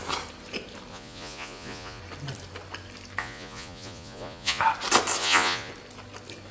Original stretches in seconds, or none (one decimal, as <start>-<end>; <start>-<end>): 0.0-0.9; 2.0-3.2; 4.6-5.2; 5.7-6.5